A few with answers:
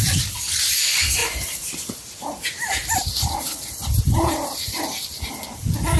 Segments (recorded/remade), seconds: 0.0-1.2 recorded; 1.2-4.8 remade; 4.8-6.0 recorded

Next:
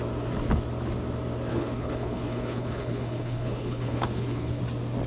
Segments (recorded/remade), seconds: 0.0-1.5 recorded; 1.5-4.6 remade; 4.6-5.1 recorded

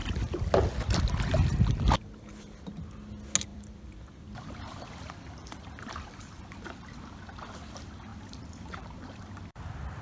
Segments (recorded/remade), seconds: 0.0-3.5 recorded; 3.5-6.4 remade; 6.4-8.1 recorded; 8.1-9.6 remade; 9.6-10.0 recorded